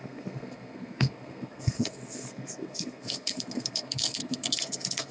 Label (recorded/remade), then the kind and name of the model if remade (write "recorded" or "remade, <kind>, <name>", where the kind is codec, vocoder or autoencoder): remade, codec, SNAC